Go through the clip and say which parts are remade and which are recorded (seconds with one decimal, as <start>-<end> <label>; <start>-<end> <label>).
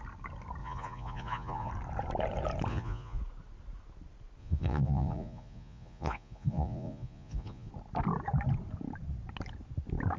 0.0-0.6 recorded; 0.6-1.7 remade; 1.7-2.7 recorded; 2.7-3.2 remade; 3.2-4.4 recorded; 4.4-7.7 remade; 7.7-10.2 recorded